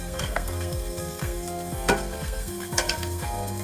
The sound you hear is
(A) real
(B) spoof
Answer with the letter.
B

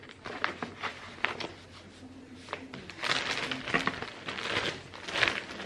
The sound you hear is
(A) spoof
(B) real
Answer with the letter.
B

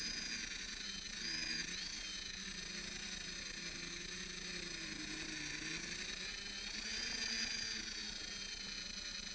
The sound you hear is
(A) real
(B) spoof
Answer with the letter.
A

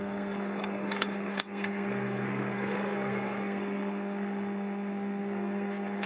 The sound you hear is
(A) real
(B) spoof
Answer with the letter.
B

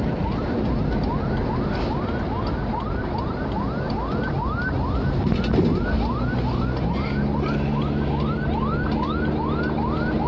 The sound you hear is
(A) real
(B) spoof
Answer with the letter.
A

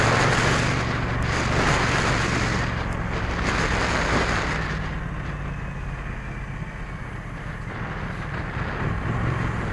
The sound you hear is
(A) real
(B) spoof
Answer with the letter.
A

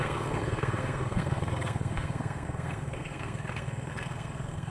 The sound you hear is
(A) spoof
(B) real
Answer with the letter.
A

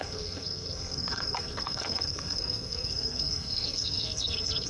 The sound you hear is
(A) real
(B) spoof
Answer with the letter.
B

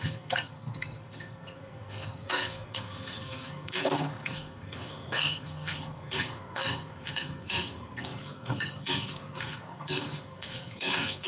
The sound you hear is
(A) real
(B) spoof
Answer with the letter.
B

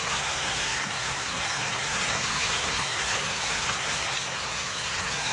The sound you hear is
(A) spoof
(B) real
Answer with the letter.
A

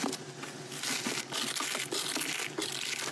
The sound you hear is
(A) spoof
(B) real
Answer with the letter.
B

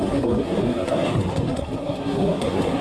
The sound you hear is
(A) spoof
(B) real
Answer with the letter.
A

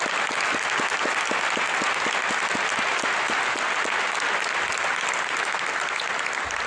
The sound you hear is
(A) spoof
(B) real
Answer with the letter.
B